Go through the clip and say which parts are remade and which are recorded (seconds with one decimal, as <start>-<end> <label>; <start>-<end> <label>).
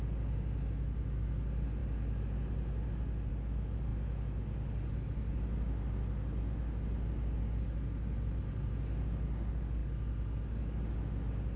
0.0-11.6 recorded